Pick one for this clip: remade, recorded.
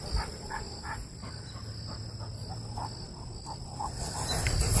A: recorded